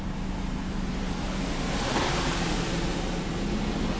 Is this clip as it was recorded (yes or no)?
no